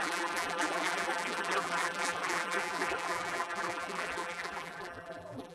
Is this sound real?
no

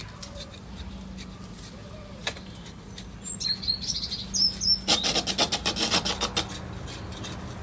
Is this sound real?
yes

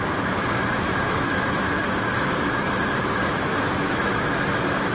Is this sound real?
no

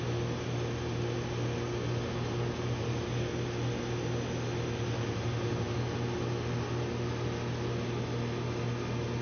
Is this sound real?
yes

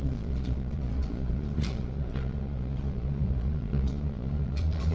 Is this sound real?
no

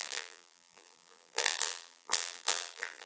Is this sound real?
no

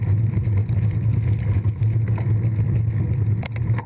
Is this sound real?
yes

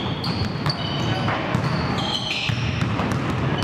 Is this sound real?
yes